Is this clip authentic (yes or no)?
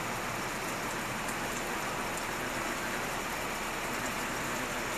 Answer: yes